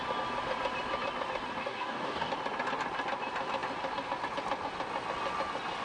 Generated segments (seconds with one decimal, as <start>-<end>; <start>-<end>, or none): 1.6-2.3